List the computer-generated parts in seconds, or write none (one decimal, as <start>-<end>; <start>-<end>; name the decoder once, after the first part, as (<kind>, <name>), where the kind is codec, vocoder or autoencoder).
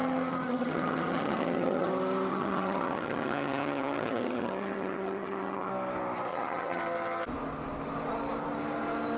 0.0-1.9 (vocoder, HiFi-GAN); 2.3-5.7; 6.3-6.8